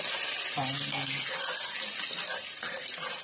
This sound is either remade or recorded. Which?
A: recorded